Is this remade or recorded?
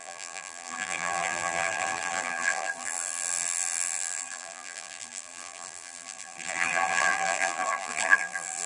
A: remade